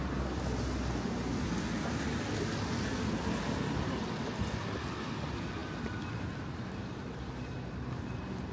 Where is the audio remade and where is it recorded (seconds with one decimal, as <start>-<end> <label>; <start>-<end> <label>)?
0.0-8.5 recorded

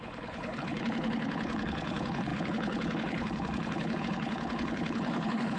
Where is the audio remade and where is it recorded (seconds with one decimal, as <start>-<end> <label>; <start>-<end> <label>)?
0.0-5.6 remade

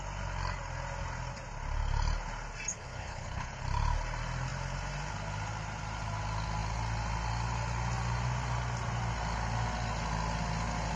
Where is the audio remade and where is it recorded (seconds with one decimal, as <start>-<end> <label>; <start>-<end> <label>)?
0.0-2.7 recorded; 2.7-3.6 remade; 3.6-11.0 recorded

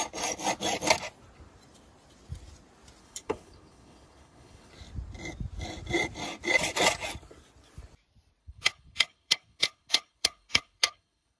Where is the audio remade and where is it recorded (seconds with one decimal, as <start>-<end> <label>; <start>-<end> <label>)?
0.0-3.0 recorded; 3.0-4.7 remade; 4.7-8.4 recorded; 8.4-11.4 remade

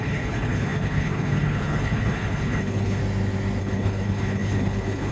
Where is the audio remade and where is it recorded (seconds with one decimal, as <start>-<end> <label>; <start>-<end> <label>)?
0.0-3.0 remade; 3.0-3.6 recorded; 3.6-5.1 remade

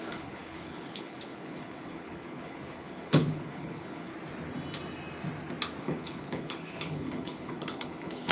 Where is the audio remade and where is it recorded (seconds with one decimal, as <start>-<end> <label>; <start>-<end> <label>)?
0.0-4.1 remade; 4.1-5.8 recorded; 5.8-8.3 remade